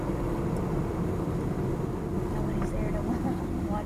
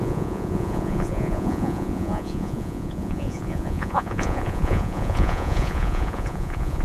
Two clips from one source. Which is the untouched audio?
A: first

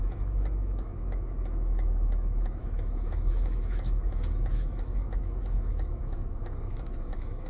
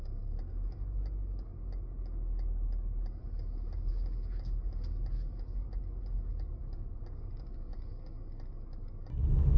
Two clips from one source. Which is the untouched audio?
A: second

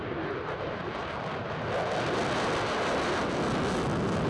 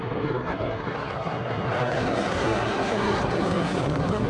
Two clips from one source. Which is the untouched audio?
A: first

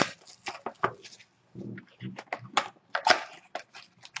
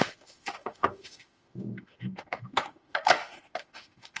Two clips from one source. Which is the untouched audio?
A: first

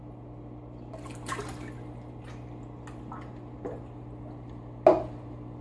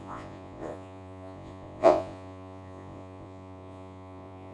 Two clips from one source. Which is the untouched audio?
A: first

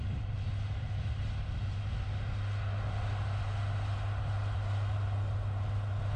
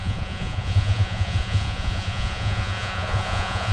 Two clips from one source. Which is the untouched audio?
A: first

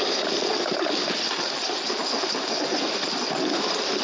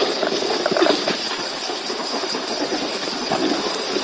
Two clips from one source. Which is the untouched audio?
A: first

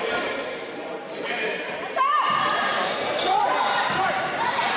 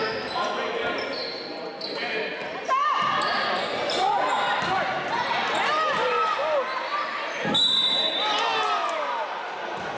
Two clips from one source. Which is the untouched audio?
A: second